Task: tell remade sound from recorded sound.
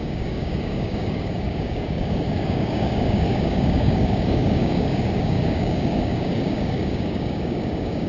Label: remade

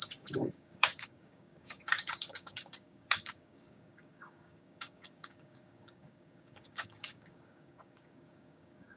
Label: remade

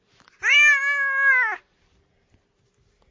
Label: recorded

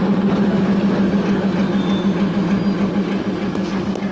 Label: recorded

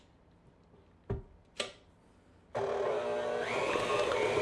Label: recorded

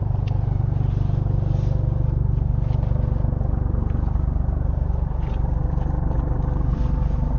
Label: recorded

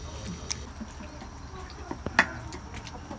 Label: recorded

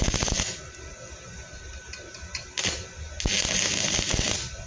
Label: recorded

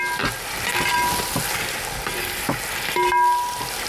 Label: recorded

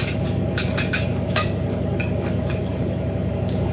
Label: remade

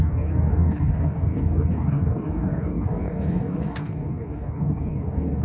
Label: remade